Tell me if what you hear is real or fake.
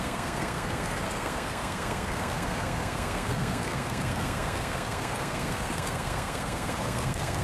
fake